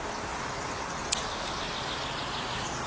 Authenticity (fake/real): real